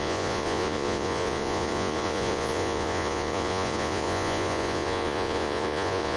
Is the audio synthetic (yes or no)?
yes